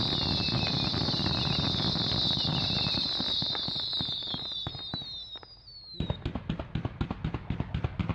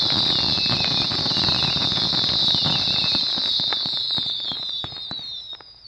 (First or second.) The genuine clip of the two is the first